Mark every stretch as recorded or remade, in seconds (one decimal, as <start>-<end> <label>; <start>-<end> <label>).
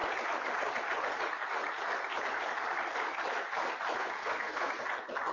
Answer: 0.0-4.0 recorded; 4.0-4.7 remade; 4.7-5.3 recorded